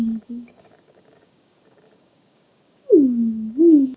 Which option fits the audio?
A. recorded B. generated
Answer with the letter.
B